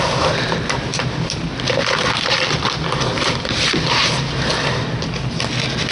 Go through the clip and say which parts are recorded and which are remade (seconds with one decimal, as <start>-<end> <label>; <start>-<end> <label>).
0.0-0.9 recorded; 0.9-4.1 remade; 4.1-5.9 recorded